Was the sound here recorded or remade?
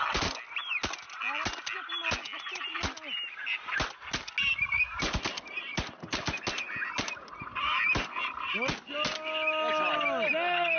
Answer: recorded